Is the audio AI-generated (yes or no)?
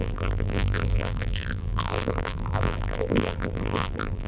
yes